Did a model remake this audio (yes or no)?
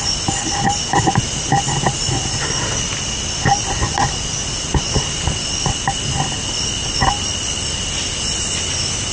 no